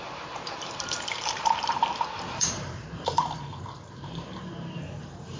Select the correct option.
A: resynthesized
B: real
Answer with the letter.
A